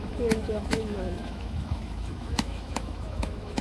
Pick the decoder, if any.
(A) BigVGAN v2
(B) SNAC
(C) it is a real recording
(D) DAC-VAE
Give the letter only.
D